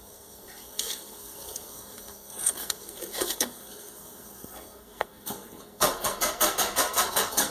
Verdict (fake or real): fake